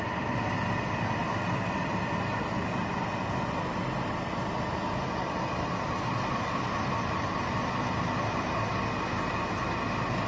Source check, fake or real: real